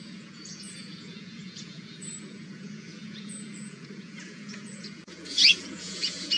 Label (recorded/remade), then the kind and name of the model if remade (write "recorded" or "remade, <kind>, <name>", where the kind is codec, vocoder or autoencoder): remade, vocoder, Vocos